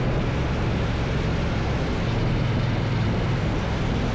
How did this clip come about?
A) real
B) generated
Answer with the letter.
A